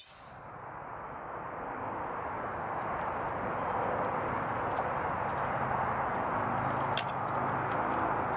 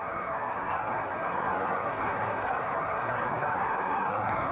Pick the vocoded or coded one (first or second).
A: second